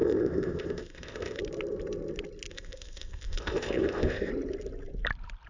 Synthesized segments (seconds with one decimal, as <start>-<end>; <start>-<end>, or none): 0.0-1.4; 2.5-4.3